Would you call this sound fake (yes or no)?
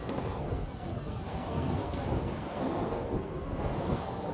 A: yes